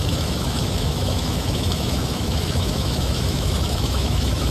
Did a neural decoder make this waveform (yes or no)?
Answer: yes